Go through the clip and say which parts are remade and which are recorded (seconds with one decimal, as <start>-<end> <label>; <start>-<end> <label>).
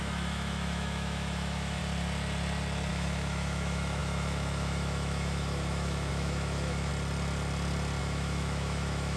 0.0-1.8 remade; 1.8-2.9 recorded; 2.9-6.9 remade; 6.9-8.0 recorded; 8.0-9.2 remade